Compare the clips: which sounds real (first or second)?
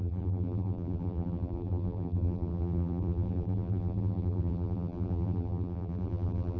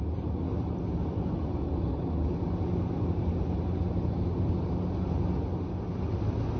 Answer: second